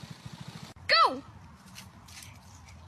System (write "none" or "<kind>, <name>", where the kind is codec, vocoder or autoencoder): none